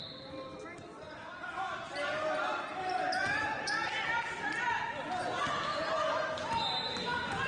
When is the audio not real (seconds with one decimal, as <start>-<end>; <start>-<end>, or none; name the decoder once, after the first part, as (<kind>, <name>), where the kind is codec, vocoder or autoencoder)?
none